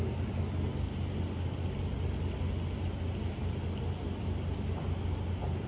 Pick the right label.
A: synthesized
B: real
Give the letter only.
B